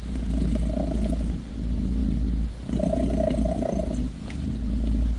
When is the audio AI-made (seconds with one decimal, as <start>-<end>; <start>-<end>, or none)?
none